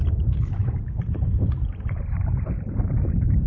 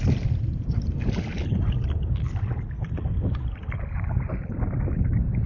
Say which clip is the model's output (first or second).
first